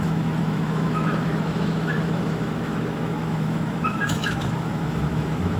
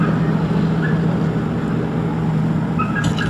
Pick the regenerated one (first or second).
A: first